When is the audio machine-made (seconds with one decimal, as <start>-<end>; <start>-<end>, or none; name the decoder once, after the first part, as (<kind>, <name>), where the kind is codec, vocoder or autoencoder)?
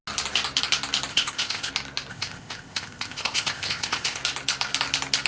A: 1.1-1.7 (codec, ZipCodec); 2.1-4.2